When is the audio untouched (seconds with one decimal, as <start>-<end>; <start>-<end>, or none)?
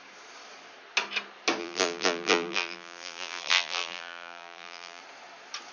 0.0-1.6; 5.0-5.7